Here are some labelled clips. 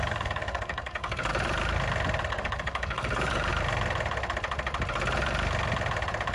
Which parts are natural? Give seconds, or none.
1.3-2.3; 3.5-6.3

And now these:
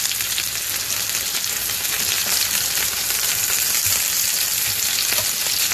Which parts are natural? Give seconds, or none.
0.0-2.2; 3.0-5.7

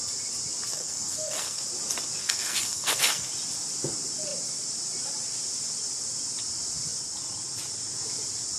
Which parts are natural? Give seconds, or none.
0.0-0.7; 1.6-2.2; 3.3-8.6

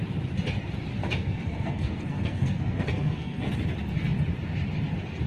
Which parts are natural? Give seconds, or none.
0.0-1.0; 3.5-5.3

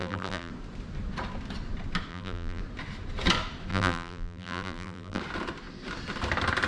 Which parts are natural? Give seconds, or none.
0.5-2.1; 2.6-3.7; 5.2-6.7

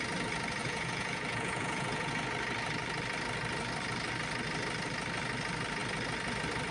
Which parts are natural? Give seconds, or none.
0.0-0.6; 2.1-6.7